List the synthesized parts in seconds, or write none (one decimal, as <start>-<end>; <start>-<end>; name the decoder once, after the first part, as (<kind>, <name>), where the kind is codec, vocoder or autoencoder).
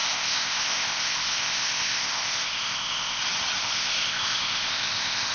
0.0-3.2 (codec, ZipCodec); 3.6-5.3